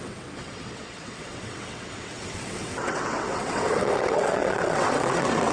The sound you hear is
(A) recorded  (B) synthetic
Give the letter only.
B